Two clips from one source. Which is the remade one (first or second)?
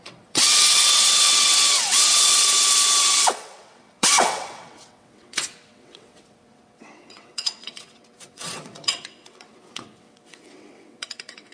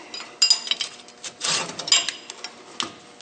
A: first